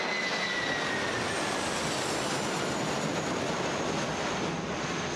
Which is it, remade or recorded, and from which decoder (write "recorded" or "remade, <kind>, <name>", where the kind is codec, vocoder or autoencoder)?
recorded